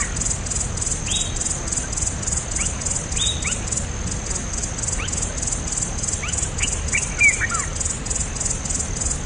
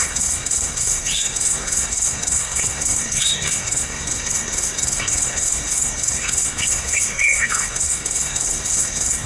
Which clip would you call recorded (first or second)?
first